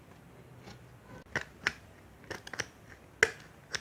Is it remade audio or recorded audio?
recorded